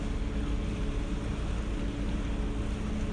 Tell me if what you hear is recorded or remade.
recorded